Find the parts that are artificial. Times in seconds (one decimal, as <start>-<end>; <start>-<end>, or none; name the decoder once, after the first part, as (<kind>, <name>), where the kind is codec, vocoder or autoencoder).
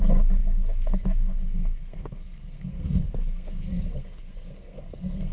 0.0-5.3 (codec, SNAC)